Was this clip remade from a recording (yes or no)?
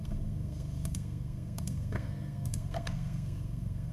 yes